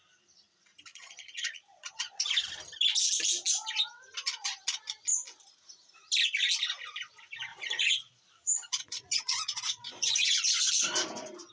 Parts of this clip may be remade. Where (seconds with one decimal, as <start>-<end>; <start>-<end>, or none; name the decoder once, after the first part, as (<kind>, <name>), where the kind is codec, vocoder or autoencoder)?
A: 0.9-2.3 (vocoder, Vocos); 7.5-10.7